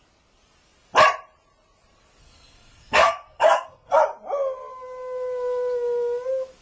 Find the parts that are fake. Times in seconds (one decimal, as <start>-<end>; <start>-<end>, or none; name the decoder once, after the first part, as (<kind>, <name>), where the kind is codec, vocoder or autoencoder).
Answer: 2.2-4.0 (codec, SNAC)